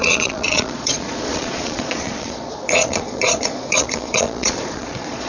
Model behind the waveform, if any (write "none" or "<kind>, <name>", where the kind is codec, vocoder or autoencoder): vocoder, Vocos